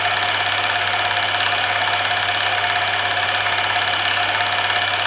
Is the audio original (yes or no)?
yes